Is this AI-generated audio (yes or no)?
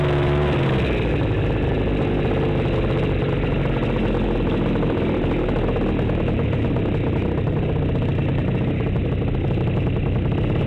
no